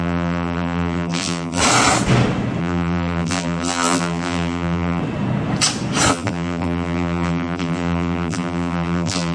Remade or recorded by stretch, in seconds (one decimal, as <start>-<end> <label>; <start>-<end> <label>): 0.0-1.6 remade; 1.6-2.6 recorded; 2.6-5.0 remade; 5.0-6.1 recorded; 6.1-9.3 remade